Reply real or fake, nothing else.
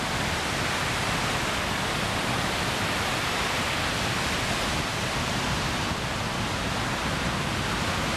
real